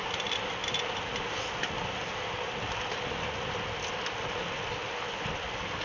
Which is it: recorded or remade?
recorded